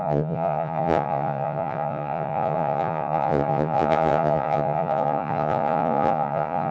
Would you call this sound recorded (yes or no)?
no